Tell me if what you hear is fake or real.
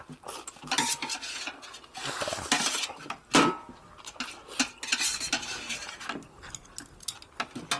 real